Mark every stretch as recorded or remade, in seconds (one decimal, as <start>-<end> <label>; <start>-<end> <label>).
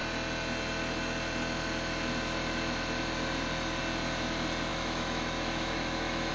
0.0-4.7 recorded; 4.7-6.3 remade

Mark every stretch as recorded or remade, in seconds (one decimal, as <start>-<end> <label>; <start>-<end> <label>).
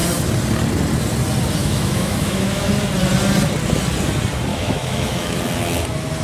0.0-1.6 recorded; 1.6-2.7 remade; 2.7-4.5 recorded; 4.5-5.4 remade; 5.4-6.2 recorded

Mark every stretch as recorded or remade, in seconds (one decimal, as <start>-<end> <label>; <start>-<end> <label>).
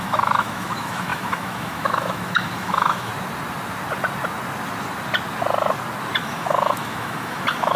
0.0-3.1 remade; 3.1-6.2 recorded; 6.2-7.8 remade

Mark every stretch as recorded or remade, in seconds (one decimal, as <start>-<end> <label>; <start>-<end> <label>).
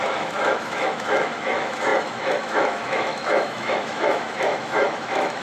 0.0-5.4 remade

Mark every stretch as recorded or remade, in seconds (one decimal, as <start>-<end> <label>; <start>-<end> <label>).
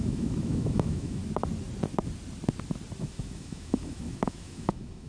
0.0-1.2 remade; 1.2-3.0 recorded; 3.0-5.1 remade